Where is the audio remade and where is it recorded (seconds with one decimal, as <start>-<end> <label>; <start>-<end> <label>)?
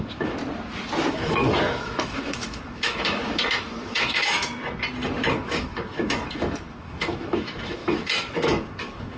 0.0-0.4 remade; 0.4-1.1 recorded; 1.1-4.5 remade; 4.5-5.3 recorded; 5.3-9.2 remade